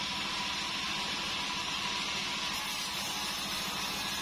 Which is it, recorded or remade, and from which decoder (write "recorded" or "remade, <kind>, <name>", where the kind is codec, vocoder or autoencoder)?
recorded